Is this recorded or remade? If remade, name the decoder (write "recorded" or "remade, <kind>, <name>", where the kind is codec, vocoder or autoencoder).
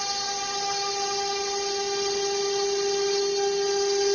recorded